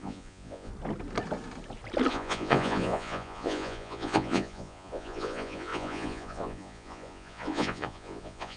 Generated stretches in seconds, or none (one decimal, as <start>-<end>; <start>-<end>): 0.0-0.7; 2.1-8.6